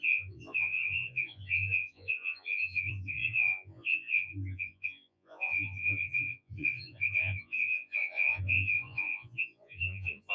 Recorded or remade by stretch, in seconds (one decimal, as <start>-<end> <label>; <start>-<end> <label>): 0.0-10.3 remade